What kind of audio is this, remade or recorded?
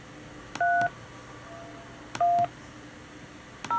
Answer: recorded